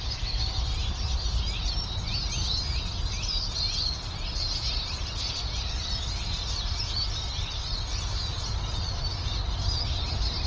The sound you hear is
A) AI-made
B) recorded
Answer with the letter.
B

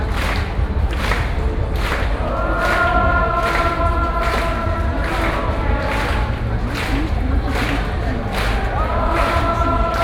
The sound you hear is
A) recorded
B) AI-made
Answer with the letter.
A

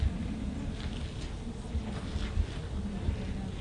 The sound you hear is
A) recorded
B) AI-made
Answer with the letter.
A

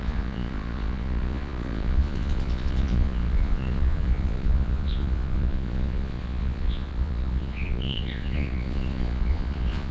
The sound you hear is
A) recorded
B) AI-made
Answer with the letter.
B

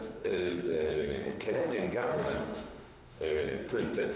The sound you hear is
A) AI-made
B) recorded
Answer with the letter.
A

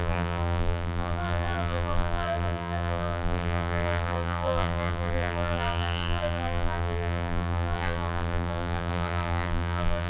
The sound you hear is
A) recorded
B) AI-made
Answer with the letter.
B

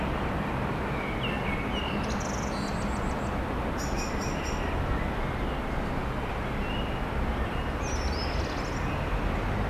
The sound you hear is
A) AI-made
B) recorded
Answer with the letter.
B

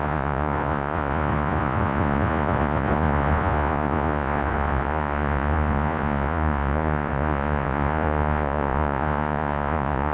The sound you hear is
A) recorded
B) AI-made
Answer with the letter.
B